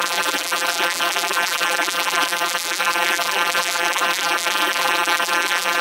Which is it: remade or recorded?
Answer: remade